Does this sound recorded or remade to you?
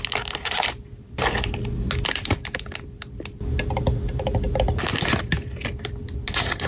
recorded